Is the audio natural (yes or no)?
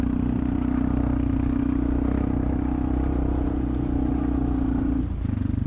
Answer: yes